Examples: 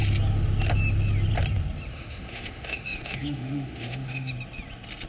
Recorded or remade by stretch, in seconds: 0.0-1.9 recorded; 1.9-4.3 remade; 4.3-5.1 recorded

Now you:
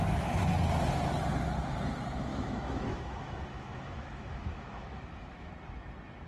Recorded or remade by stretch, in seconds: 0.0-2.3 recorded; 2.3-5.5 remade; 5.5-6.3 recorded

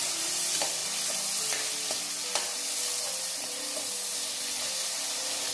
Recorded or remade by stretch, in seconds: 0.0-5.5 recorded

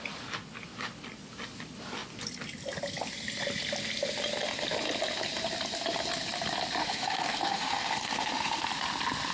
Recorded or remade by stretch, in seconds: 0.0-6.8 recorded; 6.8-8.6 remade; 8.6-9.3 recorded

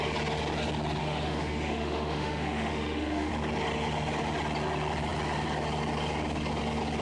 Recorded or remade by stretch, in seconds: 0.0-1.0 recorded; 1.0-3.3 remade; 3.3-7.0 recorded